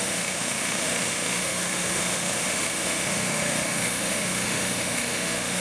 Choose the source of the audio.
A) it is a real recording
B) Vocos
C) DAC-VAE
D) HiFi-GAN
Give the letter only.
C